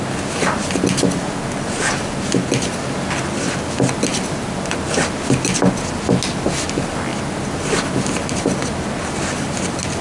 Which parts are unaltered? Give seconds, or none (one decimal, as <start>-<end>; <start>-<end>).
0.0-10.0